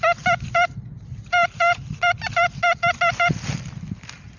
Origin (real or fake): real